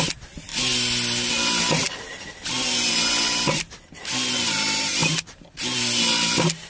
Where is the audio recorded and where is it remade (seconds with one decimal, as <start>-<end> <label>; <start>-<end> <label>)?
0.0-6.7 recorded